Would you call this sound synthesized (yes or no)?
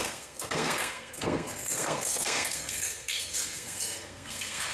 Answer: yes